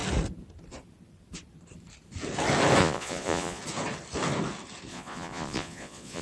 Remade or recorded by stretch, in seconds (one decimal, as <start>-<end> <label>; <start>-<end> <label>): 0.0-2.8 recorded; 2.8-3.6 remade; 3.6-4.9 recorded; 4.9-6.2 remade